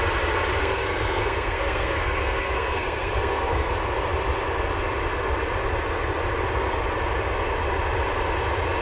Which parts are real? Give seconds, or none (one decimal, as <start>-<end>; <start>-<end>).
0.0-0.6; 3.7-8.8